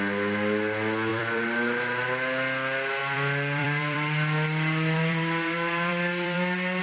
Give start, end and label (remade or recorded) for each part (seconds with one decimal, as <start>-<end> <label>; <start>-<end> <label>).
0.0-1.1 recorded; 1.1-2.0 remade; 2.0-3.0 recorded; 3.0-6.8 remade